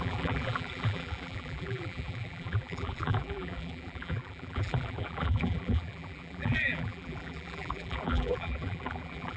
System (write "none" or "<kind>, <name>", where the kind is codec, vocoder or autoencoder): vocoder, BigVGAN v2